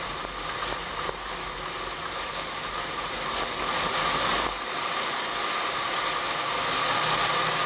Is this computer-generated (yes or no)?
no